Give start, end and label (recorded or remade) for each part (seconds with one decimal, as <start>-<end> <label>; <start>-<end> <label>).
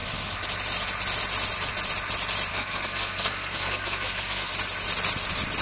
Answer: 0.0-2.5 recorded; 2.5-4.5 remade; 4.5-5.6 recorded